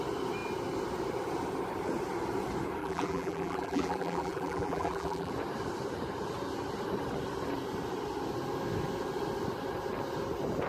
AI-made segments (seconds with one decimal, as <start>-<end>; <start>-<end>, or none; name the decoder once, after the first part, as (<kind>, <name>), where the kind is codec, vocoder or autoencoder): 2.8-5.3 (vocoder, BigVGAN v2)